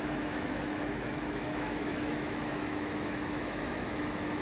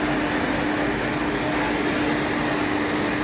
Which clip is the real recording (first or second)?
second